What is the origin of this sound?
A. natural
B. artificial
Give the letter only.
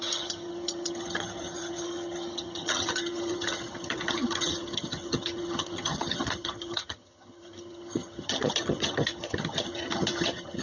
B